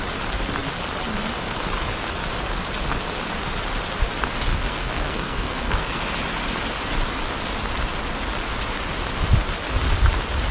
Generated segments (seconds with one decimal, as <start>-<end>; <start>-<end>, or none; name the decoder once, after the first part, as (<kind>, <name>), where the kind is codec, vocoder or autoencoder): 4.5-6.0 (codec, SNAC)